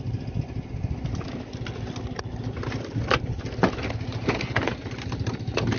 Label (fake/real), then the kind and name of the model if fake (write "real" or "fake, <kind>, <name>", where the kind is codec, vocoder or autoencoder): real